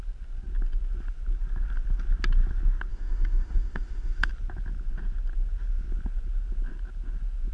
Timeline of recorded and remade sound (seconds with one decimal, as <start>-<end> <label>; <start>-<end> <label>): 0.0-2.9 recorded; 2.9-4.3 remade; 4.3-7.5 recorded